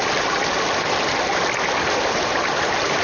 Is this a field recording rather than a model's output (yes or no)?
yes